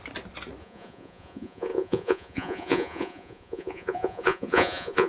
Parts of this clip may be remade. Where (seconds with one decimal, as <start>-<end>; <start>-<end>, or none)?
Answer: 0.6-5.1